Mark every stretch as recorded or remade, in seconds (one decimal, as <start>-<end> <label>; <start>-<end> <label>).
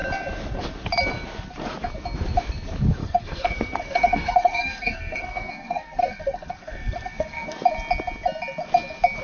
0.0-3.0 recorded; 3.0-7.5 remade; 7.5-9.2 recorded